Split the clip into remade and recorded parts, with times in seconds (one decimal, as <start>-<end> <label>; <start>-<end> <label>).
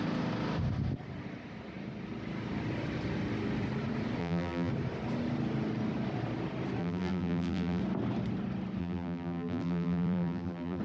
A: 0.0-4.2 recorded; 4.2-4.7 remade; 4.7-6.8 recorded; 6.8-7.8 remade; 7.8-8.8 recorded; 8.8-10.8 remade